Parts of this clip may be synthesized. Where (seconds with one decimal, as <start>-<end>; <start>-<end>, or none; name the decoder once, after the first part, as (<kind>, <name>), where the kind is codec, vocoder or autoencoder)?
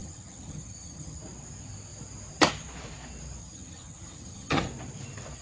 0.0-1.2 (vocoder, HiFi-GAN); 3.4-4.7